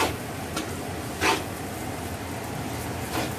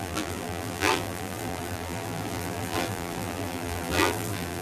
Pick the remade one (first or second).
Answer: second